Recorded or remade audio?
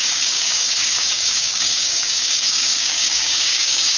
remade